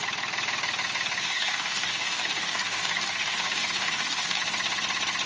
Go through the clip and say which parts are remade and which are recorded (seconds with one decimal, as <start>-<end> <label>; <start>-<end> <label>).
0.0-1.2 recorded; 1.2-4.4 remade; 4.4-5.3 recorded